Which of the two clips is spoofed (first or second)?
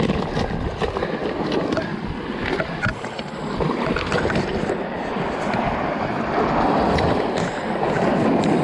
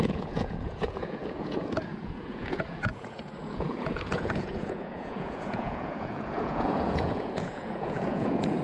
second